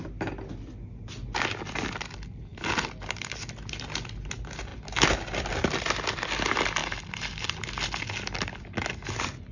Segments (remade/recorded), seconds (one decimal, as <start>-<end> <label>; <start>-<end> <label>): 0.0-9.5 recorded